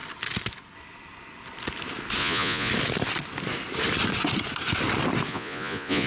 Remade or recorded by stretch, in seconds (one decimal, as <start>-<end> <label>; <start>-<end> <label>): 0.0-2.2 recorded; 2.2-2.7 remade; 2.7-5.3 recorded; 5.3-6.1 remade